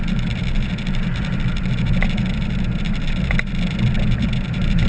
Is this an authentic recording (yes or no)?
no